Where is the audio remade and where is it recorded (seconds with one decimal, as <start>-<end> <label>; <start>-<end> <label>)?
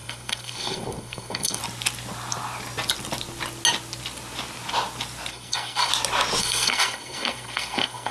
0.0-1.6 remade; 1.6-5.3 recorded; 5.3-5.9 remade; 5.9-6.4 recorded; 6.4-8.1 remade